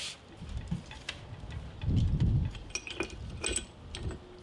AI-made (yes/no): no